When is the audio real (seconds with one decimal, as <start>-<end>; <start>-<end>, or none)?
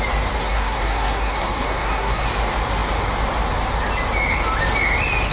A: 0.0-0.4; 2.3-5.3